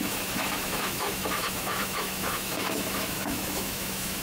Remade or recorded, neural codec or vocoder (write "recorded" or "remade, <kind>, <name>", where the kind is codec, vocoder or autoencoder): remade, autoencoder, DAC-VAE